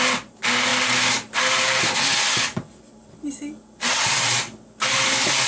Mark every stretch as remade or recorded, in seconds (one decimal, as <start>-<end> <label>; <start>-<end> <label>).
0.0-0.7 recorded; 0.7-1.8 remade; 1.8-3.0 recorded; 3.0-4.1 remade; 4.1-5.5 recorded